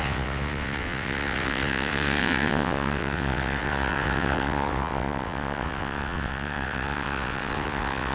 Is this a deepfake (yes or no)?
yes